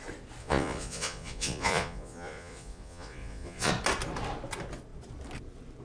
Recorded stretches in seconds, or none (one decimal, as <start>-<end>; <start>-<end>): 0.0-0.4; 3.7-5.8